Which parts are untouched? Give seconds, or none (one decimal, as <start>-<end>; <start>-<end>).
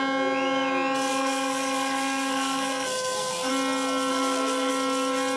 0.0-1.1; 3.5-4.1; 4.7-5.4